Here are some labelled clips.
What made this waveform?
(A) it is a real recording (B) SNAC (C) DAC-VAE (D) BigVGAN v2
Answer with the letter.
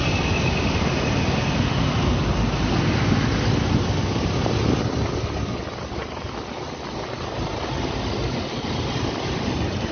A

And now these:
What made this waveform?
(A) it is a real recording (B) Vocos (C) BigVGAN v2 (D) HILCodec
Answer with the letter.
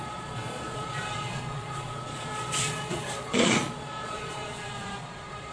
B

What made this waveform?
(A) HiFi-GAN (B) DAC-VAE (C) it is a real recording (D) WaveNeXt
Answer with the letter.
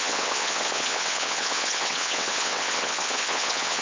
D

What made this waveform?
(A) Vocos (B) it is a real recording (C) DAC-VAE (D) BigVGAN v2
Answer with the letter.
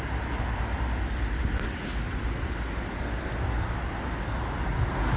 B